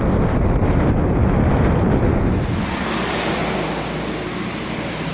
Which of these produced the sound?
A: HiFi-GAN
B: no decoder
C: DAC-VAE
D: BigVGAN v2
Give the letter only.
B